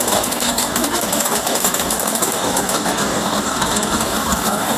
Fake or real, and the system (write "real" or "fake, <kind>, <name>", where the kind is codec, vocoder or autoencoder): fake, codec, DAC